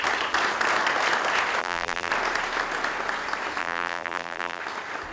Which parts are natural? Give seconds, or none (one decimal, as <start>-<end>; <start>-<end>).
0.0-1.6; 2.1-3.6; 4.6-5.1